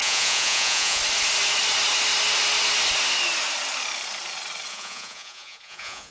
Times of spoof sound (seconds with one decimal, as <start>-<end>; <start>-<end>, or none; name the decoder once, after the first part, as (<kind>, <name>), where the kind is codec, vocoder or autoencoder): 0.0-1.0 (vocoder, Vocos); 4.7-6.1